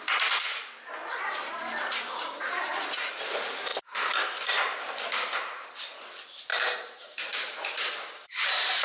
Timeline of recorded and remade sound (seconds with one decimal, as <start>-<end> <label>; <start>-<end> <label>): 0.0-1.0 recorded; 1.0-2.7 remade; 2.7-6.5 recorded; 6.5-7.7 remade; 7.7-8.8 recorded